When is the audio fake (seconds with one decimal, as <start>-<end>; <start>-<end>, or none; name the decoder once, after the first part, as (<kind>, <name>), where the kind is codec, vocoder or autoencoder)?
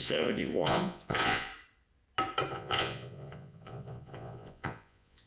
0.0-1.5 (vocoder, Vocos); 2.5-5.3